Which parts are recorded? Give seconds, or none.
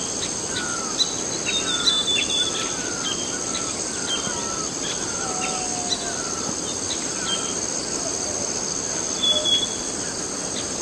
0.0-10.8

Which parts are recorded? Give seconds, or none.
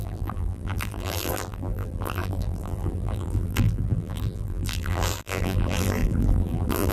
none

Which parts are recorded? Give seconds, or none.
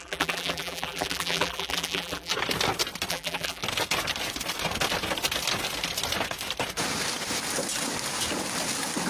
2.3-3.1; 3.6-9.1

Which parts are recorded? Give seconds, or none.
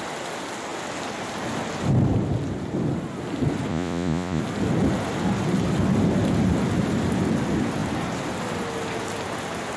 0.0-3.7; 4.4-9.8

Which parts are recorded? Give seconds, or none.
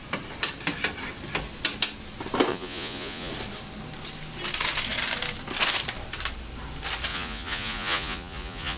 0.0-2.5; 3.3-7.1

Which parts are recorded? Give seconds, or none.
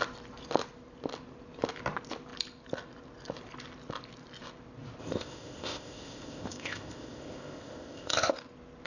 0.0-5.0; 8.3-8.9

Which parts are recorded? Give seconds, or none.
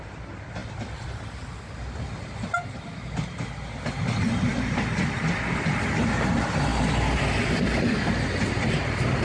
0.0-9.2